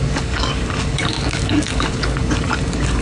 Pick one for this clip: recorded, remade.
remade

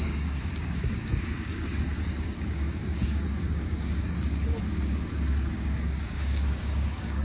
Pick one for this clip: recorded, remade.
remade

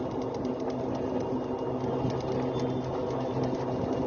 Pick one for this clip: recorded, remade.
recorded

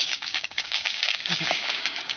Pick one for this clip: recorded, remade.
remade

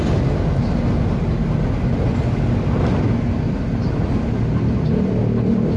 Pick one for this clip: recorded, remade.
recorded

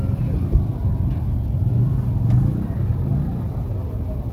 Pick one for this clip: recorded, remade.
recorded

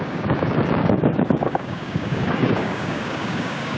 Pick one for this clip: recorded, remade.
remade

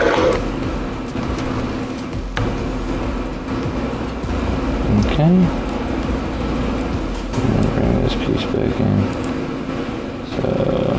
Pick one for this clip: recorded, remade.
recorded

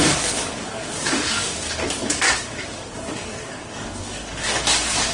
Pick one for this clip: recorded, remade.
remade